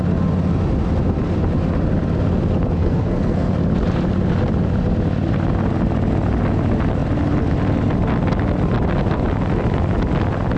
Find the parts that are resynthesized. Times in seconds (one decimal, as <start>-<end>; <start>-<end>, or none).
2.8-3.5